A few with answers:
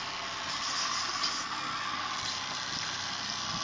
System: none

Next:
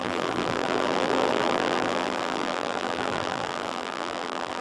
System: vocoder, BigVGAN v2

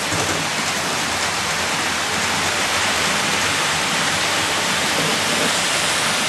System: none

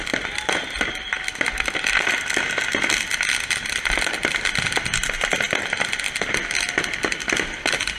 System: none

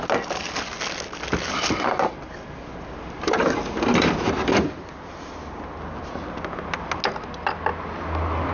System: none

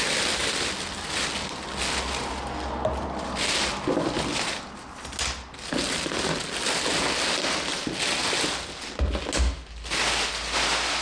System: none